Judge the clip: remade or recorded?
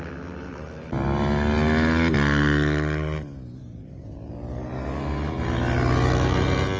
recorded